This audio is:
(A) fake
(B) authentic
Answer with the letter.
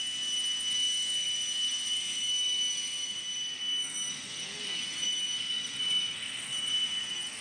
A